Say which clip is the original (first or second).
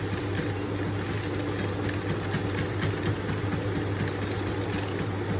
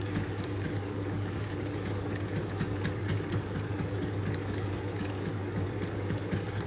first